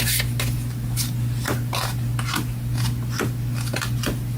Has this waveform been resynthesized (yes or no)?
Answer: no